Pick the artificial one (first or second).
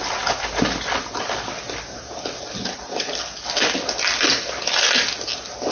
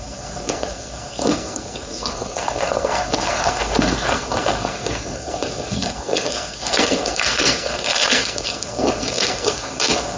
second